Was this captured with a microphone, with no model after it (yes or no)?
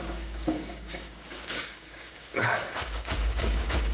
no